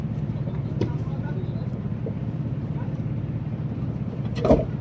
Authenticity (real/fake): fake